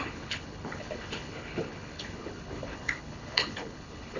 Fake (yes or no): yes